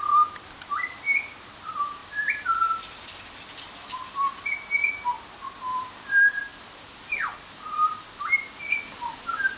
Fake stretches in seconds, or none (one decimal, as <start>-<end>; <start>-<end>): 0.0-4.3; 5.8-9.6